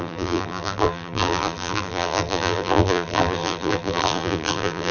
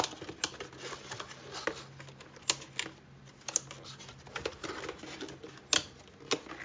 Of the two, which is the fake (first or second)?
first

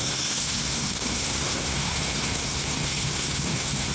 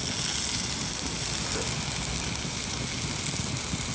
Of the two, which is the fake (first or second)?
first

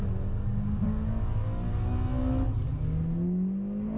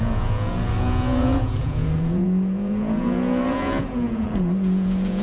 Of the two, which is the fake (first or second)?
second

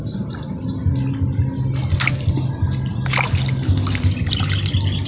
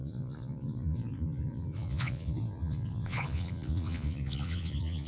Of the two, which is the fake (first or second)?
second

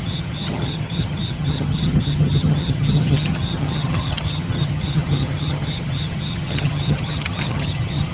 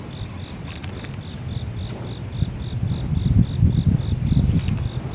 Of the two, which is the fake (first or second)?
first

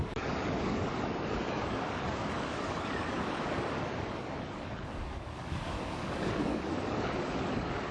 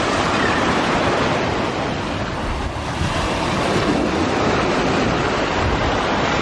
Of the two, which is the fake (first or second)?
first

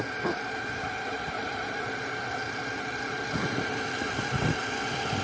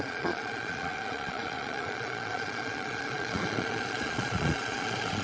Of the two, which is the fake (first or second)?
second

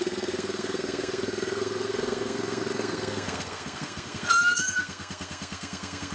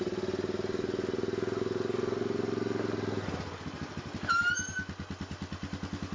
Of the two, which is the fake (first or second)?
first